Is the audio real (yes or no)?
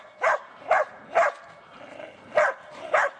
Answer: yes